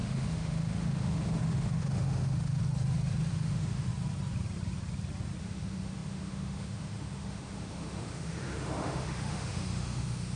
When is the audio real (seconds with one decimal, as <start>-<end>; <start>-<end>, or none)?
2.6-3.3; 3.9-5.4